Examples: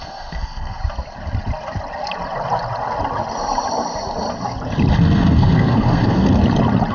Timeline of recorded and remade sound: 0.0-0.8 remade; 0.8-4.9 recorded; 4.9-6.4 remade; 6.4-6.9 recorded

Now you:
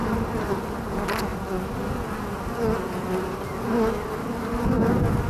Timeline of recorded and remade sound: 0.0-0.9 remade; 0.9-5.3 recorded